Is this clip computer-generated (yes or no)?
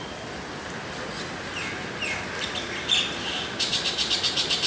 no